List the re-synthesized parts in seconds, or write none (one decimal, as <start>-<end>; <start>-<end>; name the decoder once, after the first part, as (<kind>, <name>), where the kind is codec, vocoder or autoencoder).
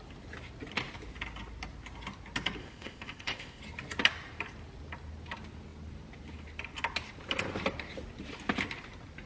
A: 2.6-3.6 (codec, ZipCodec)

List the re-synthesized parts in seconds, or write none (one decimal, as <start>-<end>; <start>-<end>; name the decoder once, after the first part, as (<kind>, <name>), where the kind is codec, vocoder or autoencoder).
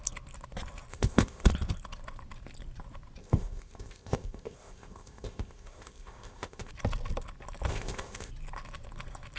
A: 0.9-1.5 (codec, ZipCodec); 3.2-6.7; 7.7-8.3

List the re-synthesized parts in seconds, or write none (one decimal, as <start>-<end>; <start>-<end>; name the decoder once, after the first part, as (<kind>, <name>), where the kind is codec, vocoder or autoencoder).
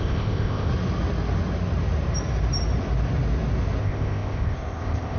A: 0.0-0.7 (codec, ZipCodec); 3.8-5.2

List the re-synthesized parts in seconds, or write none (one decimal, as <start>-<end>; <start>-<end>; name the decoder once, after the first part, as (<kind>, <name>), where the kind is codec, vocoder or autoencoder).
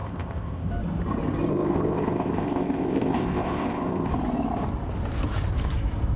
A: 0.0-0.7 (codec, ZipCodec); 1.5-4.1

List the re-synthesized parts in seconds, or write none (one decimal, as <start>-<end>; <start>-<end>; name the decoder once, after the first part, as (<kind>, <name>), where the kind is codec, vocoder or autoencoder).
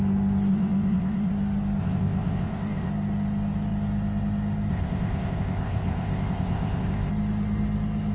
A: 0.5-1.3 (codec, ZipCodec); 1.8-2.9; 4.7-7.1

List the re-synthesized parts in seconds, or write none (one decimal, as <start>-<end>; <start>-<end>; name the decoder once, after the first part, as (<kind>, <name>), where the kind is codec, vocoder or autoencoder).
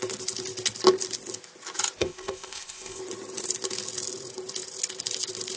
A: 2.0-3.0 (codec, ZipCodec)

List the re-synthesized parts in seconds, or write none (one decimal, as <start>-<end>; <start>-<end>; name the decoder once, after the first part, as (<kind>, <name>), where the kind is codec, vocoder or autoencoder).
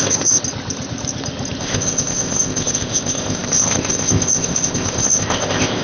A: 0.0-0.4 (codec, ZipCodec); 1.6-5.8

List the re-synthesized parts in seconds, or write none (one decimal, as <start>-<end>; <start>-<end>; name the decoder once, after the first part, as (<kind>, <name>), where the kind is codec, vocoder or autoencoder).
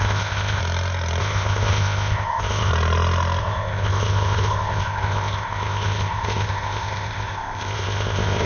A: 0.0-0.6 (codec, ZipCodec); 1.2-2.7; 3.4-8.5